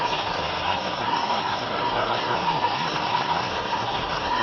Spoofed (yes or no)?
yes